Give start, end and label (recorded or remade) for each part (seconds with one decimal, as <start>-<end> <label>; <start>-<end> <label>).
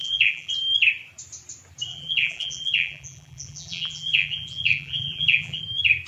0.0-0.5 remade; 0.5-1.9 recorded; 1.9-5.6 remade; 5.6-6.1 recorded